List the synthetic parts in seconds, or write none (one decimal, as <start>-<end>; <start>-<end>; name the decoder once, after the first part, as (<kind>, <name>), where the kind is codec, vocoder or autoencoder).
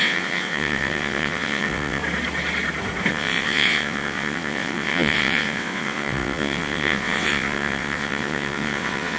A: 0.0-2.0 (vocoder, WaveNeXt); 3.1-9.2